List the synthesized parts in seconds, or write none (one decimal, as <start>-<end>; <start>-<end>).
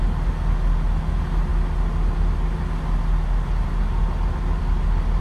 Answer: none